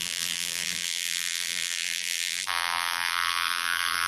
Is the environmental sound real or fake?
fake